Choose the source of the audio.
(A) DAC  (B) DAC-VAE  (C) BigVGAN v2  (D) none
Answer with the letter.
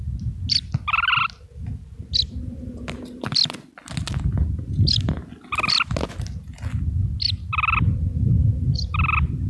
D